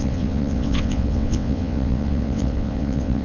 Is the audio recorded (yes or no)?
no